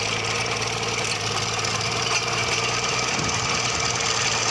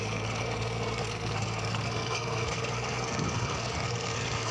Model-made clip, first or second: second